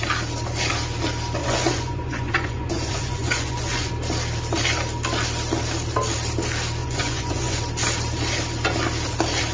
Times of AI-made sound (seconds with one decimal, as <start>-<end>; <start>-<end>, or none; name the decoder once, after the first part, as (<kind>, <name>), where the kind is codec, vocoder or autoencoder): 1.4-3.9 (vocoder, Vocos); 6.8-7.6

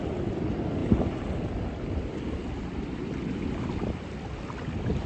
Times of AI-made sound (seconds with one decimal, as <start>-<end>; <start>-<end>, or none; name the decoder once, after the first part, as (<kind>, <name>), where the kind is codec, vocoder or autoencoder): none

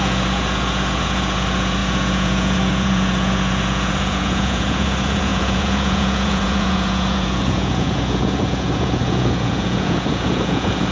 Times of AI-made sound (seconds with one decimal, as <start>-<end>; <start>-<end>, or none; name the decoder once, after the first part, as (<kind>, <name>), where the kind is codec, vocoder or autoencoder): 0.0-10.9 (vocoder, Vocos)